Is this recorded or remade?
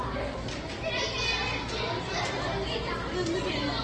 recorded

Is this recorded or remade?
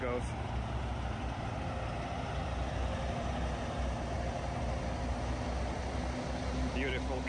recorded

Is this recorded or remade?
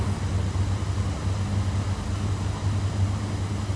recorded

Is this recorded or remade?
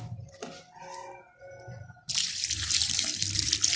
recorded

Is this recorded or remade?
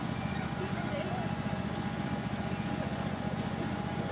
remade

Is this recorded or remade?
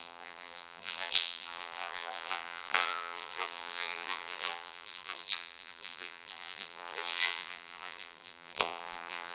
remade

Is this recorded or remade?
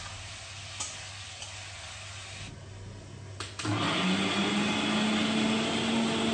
recorded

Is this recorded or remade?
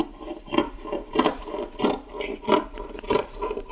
remade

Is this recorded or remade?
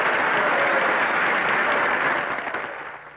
recorded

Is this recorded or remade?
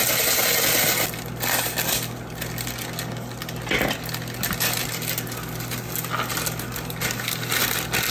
recorded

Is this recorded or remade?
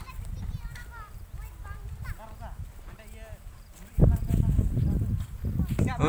recorded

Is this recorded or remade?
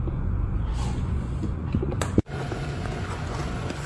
remade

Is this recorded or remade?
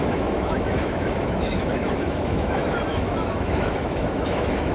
remade